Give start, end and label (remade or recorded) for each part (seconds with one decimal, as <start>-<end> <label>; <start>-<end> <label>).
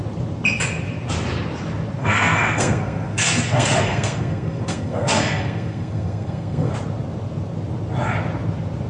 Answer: 0.0-2.0 recorded; 2.0-6.7 remade; 6.7-8.9 recorded